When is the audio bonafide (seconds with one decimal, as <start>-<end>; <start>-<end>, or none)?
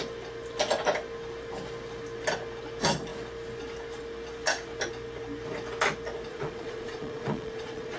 0.0-6.3